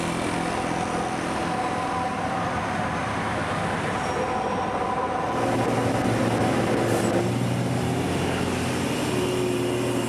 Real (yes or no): yes